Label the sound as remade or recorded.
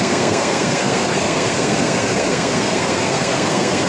remade